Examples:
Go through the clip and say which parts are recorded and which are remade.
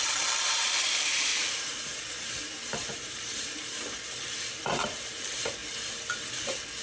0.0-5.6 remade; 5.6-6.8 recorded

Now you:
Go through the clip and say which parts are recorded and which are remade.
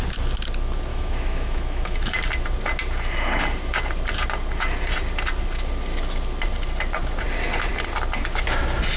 0.0-0.9 recorded; 0.9-2.2 remade; 2.2-9.0 recorded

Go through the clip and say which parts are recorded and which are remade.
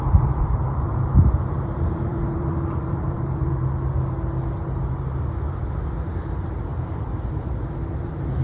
0.0-3.6 remade; 3.6-5.5 recorded; 5.5-8.4 remade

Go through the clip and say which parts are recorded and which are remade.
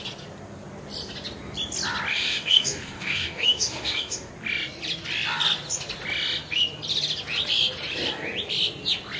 0.0-2.1 recorded; 2.1-4.3 remade; 4.3-9.2 recorded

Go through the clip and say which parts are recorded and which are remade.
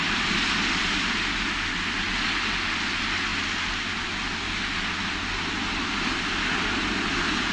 0.0-7.5 recorded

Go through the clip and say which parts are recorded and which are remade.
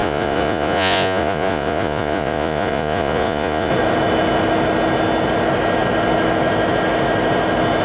0.0-3.7 remade; 3.7-7.8 recorded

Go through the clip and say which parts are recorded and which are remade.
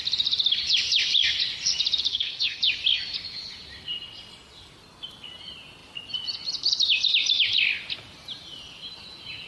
0.0-2.1 recorded; 2.1-2.6 remade; 2.6-9.5 recorded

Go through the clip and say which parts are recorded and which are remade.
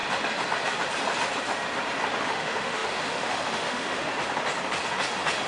0.0-2.3 recorded; 2.3-4.1 remade; 4.1-5.5 recorded